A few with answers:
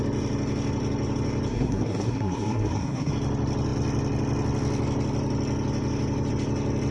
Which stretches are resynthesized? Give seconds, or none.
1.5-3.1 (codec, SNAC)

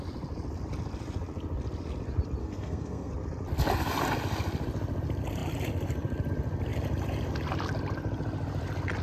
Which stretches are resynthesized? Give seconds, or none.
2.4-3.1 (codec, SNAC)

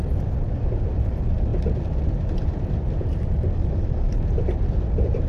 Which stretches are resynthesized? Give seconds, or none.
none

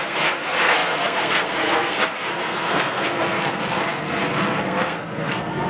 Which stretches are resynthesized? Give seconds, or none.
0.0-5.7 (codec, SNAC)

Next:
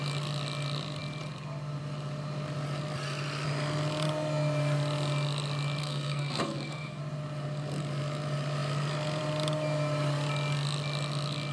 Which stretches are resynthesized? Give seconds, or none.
5.8-7.0 (codec, SNAC)

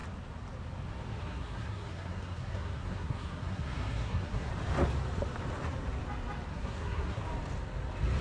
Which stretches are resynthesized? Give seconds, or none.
1.2-4.5 (codec, SNAC); 6.5-7.2

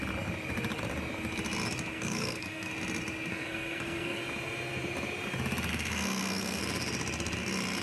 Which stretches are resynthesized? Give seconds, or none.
1.9-2.7 (codec, SNAC); 3.3-4.2; 5.7-6.6

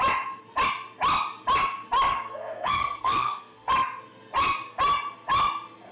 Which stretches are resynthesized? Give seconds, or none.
2.1-3.7 (codec, SNAC)